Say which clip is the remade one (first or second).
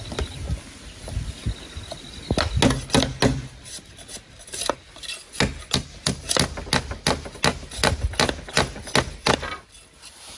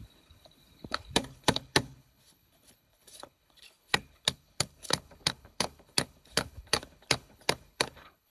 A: second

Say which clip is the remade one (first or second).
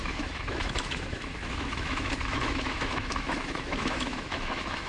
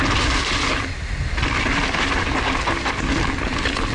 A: first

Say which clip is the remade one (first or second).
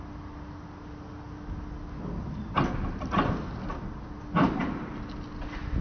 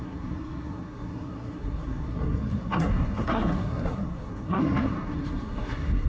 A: second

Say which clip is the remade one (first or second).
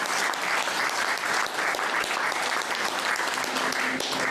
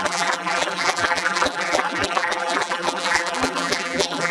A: second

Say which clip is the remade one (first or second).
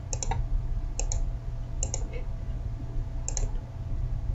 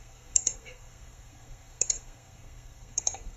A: second